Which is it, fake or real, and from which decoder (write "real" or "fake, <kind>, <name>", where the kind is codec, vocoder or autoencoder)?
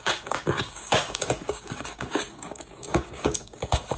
fake, codec, DAC